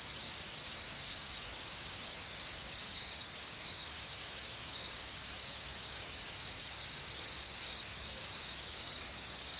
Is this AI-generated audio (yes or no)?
yes